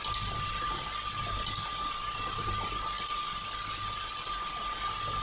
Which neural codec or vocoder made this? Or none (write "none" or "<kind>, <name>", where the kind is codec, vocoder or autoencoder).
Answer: none